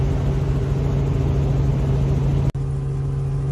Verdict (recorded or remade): recorded